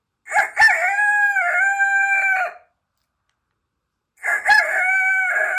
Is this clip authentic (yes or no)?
yes